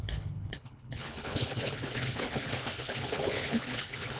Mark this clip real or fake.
fake